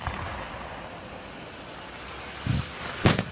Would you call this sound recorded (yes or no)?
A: yes